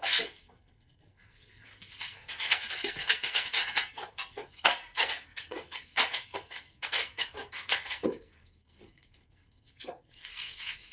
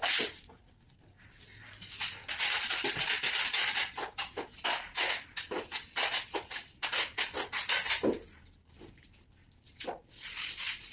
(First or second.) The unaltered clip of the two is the second